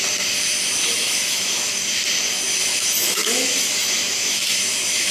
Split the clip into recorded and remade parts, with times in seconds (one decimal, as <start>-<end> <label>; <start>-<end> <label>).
0.0-0.8 recorded; 0.8-1.7 remade; 1.7-2.5 recorded; 2.5-5.1 remade